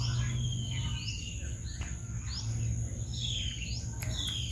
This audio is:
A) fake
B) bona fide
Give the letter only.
B